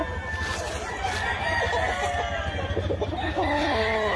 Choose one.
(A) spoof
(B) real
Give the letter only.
B